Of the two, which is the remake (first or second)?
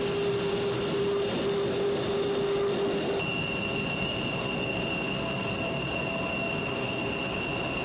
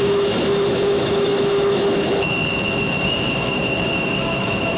second